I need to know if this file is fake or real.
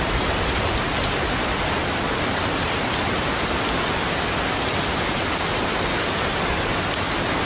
real